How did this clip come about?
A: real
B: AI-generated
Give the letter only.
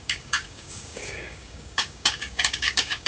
B